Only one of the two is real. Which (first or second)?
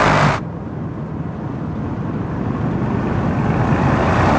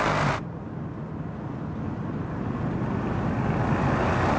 second